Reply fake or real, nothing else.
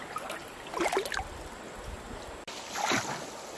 real